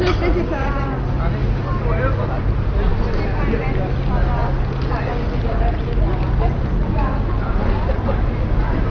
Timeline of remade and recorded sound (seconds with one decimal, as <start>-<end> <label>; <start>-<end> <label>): 0.0-8.9 recorded